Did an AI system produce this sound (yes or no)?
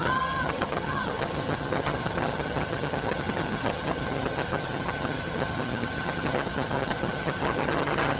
yes